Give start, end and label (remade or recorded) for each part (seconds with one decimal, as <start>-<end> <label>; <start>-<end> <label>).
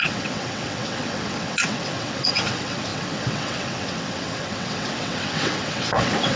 0.0-6.4 remade